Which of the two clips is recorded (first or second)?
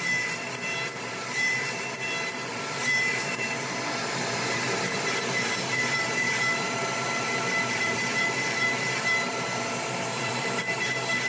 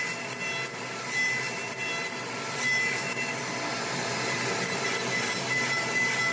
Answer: second